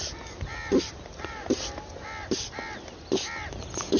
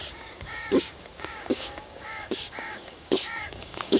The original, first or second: first